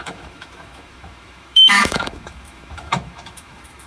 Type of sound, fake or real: fake